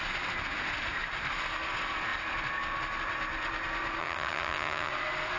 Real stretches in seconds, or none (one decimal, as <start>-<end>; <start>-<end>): 0.0-4.0; 4.9-5.4